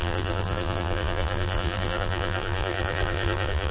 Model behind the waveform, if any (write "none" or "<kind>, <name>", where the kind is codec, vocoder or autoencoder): vocoder, BigVGAN v2